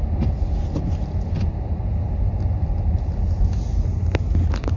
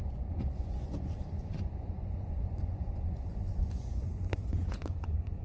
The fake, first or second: second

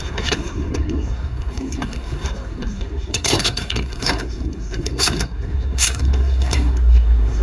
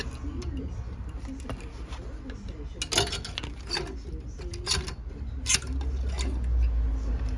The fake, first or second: first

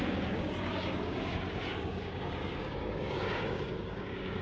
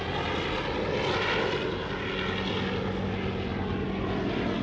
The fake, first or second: first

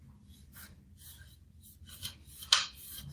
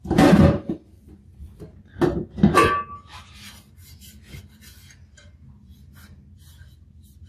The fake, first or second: first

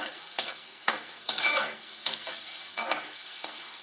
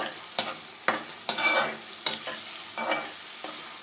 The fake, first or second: first